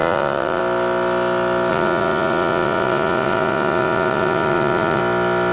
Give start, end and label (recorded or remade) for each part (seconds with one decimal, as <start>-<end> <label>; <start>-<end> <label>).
0.0-0.6 remade; 0.6-1.7 recorded; 1.7-5.0 remade; 5.0-5.5 recorded